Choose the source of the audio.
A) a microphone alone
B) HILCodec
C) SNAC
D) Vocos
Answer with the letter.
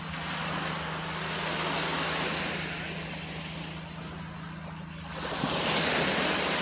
A